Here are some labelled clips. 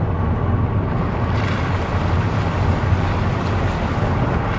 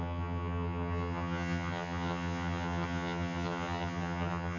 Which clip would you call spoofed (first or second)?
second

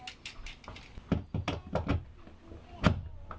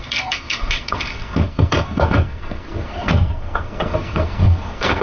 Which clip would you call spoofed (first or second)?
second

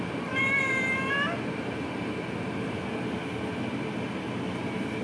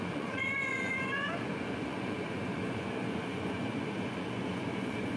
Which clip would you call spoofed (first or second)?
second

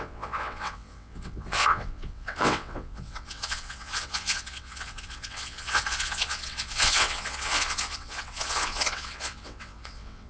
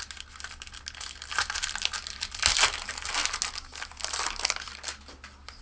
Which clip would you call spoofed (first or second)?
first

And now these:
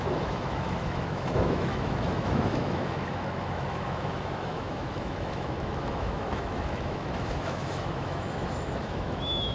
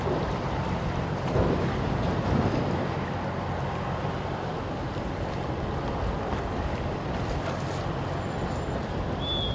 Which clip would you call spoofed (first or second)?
first